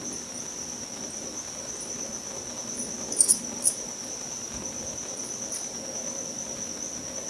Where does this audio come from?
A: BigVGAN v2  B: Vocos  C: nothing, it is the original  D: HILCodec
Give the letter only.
C